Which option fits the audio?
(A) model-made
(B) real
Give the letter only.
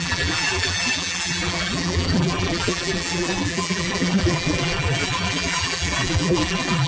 A